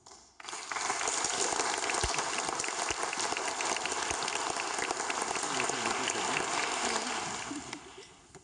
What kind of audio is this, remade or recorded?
recorded